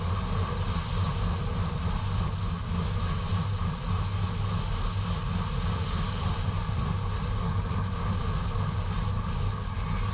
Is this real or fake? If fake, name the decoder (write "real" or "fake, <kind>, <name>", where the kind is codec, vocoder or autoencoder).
real